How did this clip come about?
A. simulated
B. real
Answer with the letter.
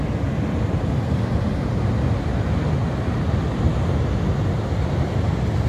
B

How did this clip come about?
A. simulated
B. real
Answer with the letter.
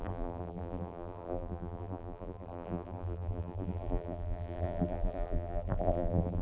A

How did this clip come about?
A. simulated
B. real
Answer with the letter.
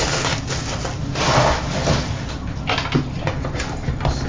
B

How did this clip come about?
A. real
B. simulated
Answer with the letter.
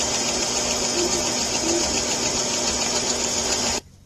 A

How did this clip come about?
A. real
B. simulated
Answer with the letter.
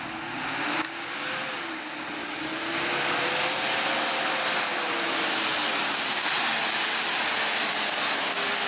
A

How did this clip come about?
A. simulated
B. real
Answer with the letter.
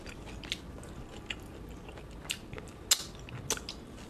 B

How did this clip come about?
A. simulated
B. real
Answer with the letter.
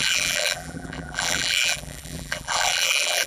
A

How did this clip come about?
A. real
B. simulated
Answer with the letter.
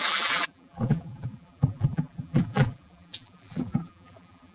B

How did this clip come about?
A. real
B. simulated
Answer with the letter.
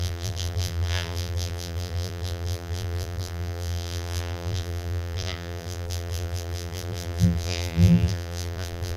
B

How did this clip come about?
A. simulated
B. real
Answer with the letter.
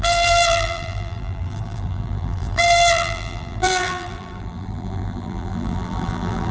A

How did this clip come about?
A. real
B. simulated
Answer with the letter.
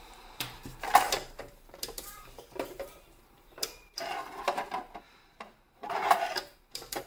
B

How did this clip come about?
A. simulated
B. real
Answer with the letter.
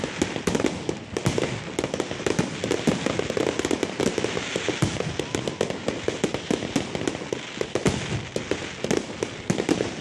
B